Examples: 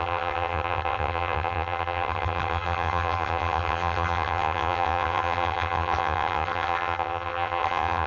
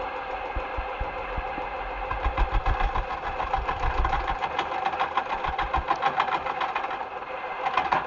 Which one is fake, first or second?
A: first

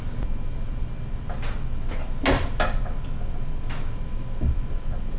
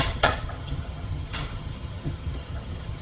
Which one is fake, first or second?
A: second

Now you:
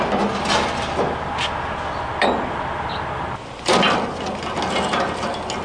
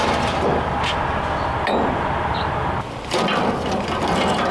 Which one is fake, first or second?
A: second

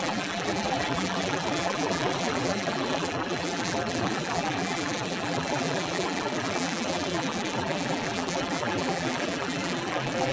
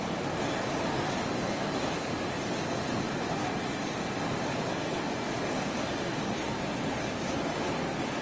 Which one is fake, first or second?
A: first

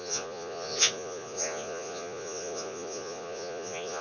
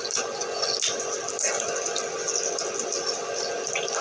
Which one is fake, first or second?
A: first